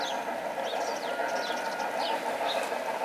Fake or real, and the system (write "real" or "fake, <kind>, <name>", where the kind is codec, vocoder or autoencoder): real